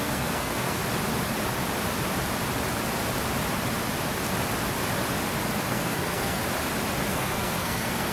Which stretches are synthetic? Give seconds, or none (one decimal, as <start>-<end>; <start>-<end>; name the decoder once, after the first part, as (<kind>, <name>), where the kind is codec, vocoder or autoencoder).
0.0-0.8 (codec, SNAC); 5.7-6.4; 7.1-8.1